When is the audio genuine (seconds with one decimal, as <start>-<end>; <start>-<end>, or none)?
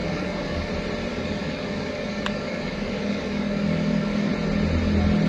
0.7-1.1; 4.3-5.3